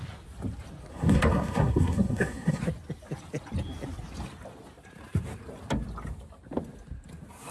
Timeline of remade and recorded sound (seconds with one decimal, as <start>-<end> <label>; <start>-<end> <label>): 0.0-0.9 recorded; 0.9-2.6 remade; 2.6-7.5 recorded